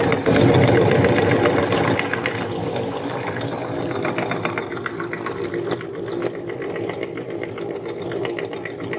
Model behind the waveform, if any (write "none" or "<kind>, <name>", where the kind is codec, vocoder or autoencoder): none